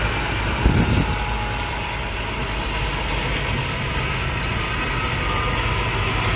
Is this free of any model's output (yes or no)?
yes